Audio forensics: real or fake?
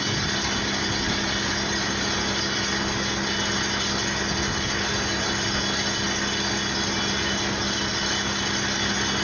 real